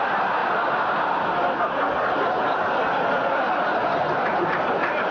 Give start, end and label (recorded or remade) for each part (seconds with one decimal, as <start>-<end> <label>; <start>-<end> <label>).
0.0-5.1 recorded